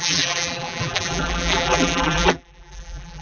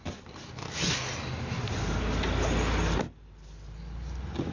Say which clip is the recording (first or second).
second